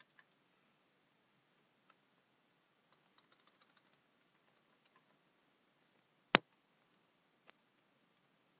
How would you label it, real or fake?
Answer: real